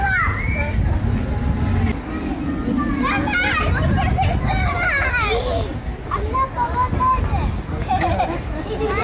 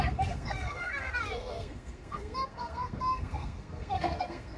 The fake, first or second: second